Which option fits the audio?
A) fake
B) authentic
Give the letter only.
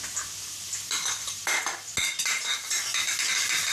B